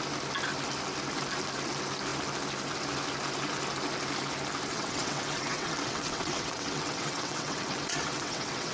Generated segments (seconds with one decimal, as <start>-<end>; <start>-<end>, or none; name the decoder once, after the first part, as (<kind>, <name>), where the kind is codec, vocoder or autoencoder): 4.7-8.7 (vocoder, WaveNeXt)